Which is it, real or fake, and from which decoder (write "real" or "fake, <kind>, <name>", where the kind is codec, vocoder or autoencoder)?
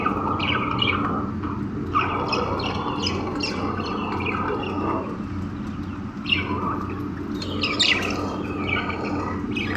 real